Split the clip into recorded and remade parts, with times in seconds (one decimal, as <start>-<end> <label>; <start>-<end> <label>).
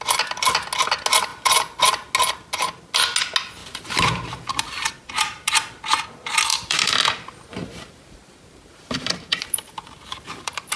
0.0-1.3 recorded; 1.3-1.8 remade; 1.8-3.6 recorded; 3.6-5.8 remade; 5.8-6.5 recorded; 6.5-10.8 remade